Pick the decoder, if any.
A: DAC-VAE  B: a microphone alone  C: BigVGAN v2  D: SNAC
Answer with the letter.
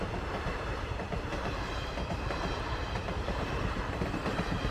C